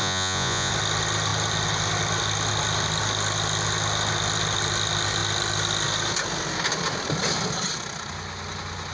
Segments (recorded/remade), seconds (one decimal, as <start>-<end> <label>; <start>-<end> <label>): 0.0-0.7 remade; 0.7-8.9 recorded